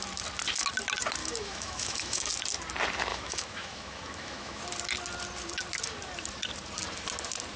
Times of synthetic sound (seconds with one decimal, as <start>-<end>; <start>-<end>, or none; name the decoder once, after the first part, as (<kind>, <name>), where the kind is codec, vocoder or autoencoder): 1.2-2.3 (autoencoder, DAC-VAE); 3.1-4.6